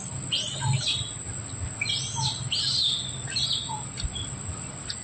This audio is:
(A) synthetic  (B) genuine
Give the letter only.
B